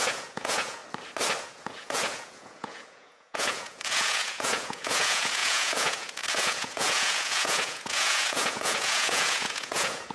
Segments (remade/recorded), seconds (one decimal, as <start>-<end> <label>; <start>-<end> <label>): 0.0-0.8 remade; 0.8-1.4 recorded; 1.4-10.1 remade